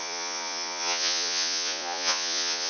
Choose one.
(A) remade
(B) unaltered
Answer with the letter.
A